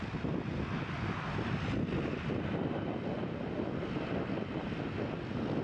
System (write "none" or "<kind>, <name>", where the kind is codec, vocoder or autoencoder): none